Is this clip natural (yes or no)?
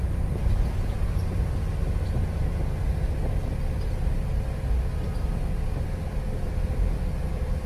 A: yes